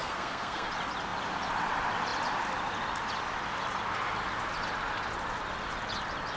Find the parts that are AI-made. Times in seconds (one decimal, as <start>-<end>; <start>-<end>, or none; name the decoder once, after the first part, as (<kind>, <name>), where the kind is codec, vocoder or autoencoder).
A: 0.0-0.7 (codec, SNAC)